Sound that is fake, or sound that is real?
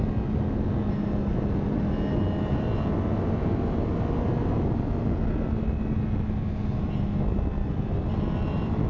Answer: real